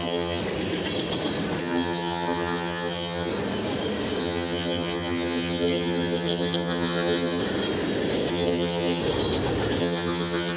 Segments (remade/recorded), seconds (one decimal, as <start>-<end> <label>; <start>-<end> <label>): 0.0-0.4 remade; 0.4-1.6 recorded; 1.6-3.3 remade; 3.3-4.2 recorded; 4.2-7.4 remade; 7.4-8.3 recorded; 8.3-9.0 remade; 9.0-9.8 recorded; 9.8-10.6 remade